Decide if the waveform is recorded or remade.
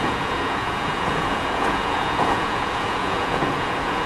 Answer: remade